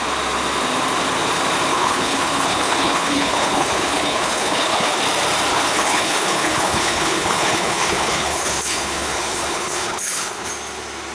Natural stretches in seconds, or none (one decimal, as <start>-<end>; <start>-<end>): 0.0-1.7; 5.0-5.5; 10.5-11.1